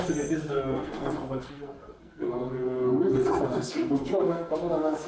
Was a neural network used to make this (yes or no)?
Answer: yes